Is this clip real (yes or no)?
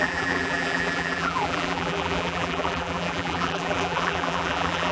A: no